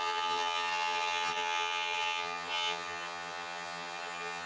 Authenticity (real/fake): fake